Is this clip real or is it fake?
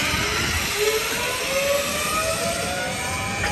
real